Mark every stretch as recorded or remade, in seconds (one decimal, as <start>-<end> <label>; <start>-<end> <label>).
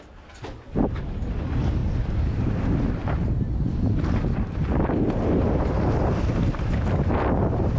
0.0-7.8 recorded